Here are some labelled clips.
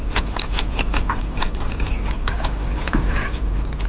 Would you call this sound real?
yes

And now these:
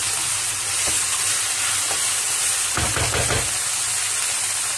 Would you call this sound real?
yes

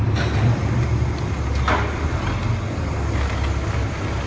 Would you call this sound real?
yes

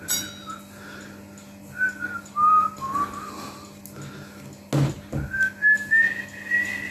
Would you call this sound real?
yes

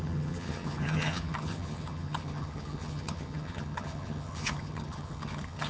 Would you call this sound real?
no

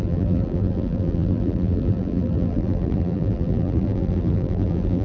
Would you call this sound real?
no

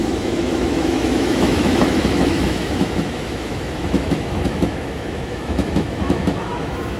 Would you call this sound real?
no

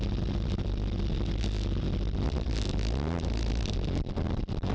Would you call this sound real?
yes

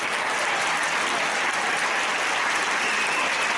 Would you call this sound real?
yes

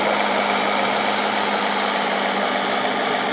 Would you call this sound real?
yes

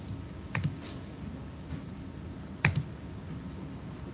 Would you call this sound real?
yes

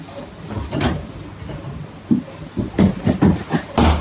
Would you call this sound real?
yes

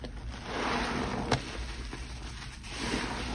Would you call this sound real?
yes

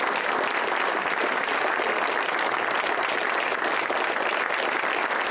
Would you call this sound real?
yes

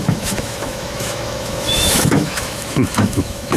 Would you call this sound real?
no